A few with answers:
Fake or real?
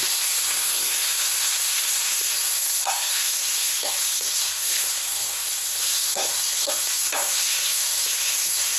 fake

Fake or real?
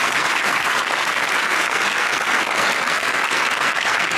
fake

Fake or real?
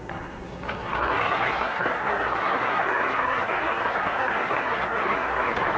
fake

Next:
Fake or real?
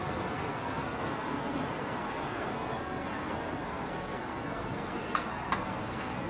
fake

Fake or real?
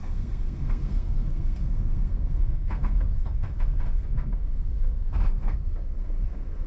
fake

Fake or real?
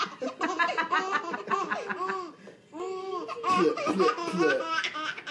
real